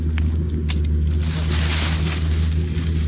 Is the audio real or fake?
real